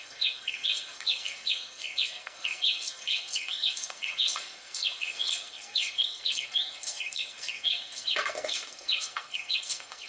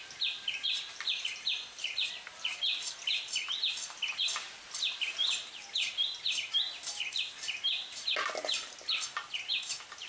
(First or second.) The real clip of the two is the second